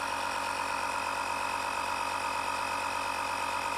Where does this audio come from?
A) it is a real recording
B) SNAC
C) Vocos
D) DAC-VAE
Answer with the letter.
A